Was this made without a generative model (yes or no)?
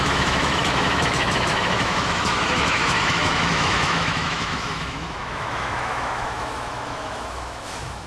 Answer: no